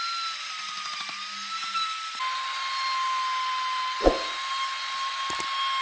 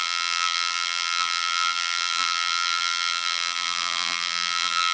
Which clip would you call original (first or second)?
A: first